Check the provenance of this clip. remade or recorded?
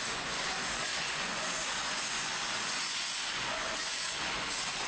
remade